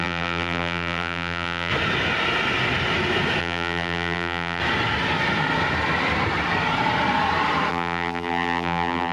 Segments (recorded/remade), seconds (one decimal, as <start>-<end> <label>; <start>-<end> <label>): 0.0-1.7 remade; 1.7-3.4 recorded; 3.4-4.6 remade; 4.6-7.7 recorded; 7.7-9.1 remade